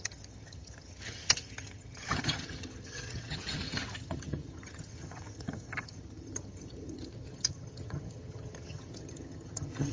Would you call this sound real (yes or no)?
no